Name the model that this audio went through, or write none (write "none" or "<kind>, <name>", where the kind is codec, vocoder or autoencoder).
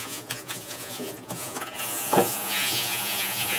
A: vocoder, Vocos